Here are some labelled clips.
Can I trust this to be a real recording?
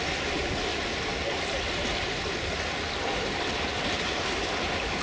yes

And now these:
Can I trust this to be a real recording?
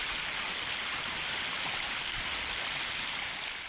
yes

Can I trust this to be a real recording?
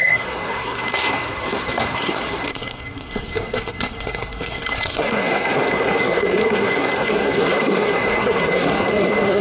no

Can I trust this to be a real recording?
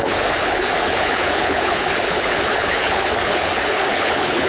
no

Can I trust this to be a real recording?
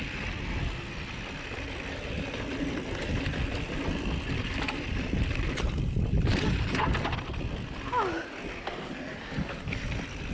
yes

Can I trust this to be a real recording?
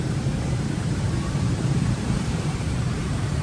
no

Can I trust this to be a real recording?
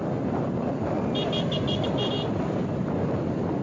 yes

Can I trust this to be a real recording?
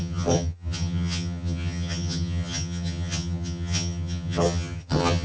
no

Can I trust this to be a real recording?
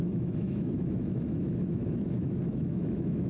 no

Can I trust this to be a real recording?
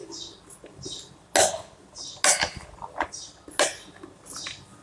yes